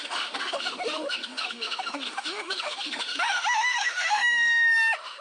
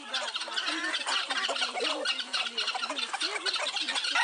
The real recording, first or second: second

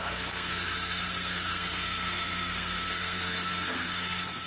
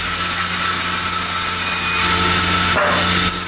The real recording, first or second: second